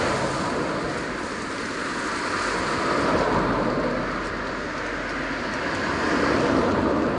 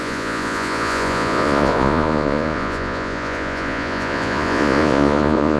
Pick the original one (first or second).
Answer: first